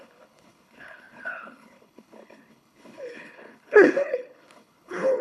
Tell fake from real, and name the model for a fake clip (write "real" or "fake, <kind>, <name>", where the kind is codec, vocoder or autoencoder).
fake, codec, HILCodec